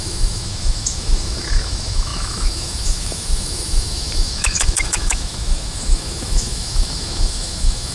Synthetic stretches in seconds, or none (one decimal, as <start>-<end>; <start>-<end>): 0.0-7.9